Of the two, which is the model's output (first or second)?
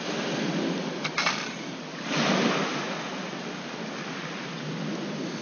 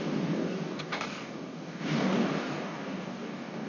second